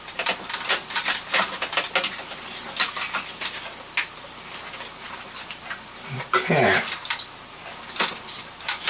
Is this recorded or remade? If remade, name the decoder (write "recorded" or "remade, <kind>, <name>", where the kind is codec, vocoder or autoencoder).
recorded